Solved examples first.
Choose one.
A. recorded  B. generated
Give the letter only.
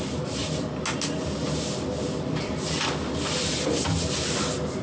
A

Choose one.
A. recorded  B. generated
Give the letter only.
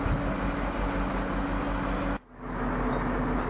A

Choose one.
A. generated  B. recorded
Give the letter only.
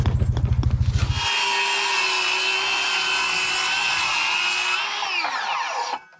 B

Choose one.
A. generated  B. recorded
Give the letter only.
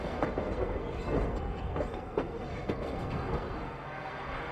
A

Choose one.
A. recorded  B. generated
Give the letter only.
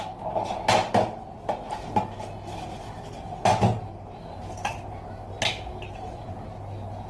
A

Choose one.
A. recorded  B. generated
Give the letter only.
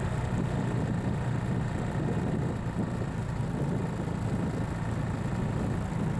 A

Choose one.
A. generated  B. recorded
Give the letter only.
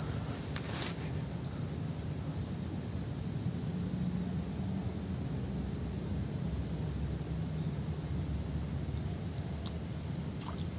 B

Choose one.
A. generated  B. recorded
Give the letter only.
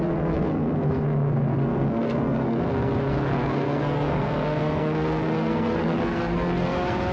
A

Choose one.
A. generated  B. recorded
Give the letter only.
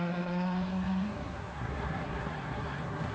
A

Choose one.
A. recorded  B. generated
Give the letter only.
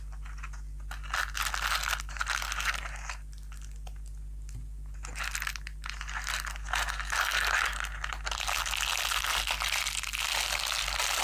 A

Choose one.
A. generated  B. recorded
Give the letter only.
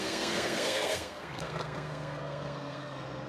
A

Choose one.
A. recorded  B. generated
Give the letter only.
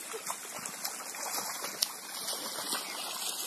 A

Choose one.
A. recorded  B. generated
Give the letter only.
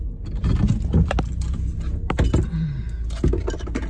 A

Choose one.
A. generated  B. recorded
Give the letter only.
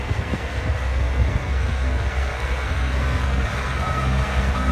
A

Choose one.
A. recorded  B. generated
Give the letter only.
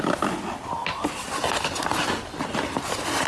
A